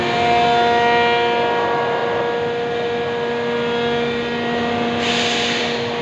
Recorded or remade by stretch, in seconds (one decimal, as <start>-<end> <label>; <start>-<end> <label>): 0.0-6.0 recorded